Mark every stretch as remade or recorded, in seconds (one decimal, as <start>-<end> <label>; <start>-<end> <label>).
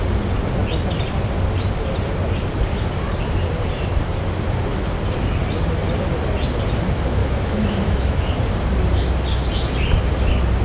0.0-7.2 recorded; 7.2-8.3 remade; 8.3-10.6 recorded